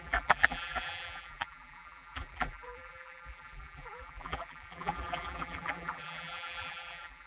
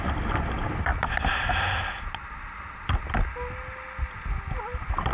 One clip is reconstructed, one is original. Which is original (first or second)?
second